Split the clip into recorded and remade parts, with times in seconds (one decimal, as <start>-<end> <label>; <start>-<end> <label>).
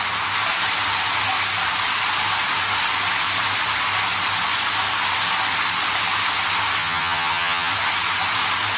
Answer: 0.0-6.8 recorded; 6.8-7.7 remade; 7.7-8.8 recorded